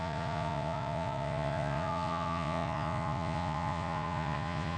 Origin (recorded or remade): remade